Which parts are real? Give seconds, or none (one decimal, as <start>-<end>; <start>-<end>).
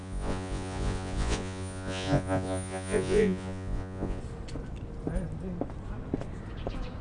4.2-7.0